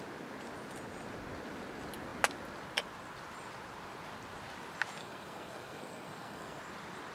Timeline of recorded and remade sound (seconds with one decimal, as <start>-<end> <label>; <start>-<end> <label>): 0.0-5.0 recorded; 5.0-6.6 remade; 6.6-7.1 recorded